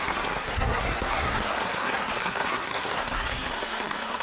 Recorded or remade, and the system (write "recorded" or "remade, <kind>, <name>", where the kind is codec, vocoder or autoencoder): remade, codec, SNAC